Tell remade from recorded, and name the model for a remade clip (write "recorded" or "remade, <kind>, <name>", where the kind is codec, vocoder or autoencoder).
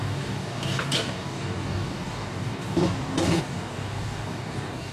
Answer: remade, codec, DAC